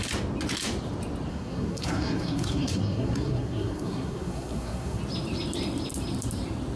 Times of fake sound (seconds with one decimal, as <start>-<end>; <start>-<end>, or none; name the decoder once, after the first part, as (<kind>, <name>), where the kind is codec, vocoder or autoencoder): 1.3-5.0 (codec, SNAC)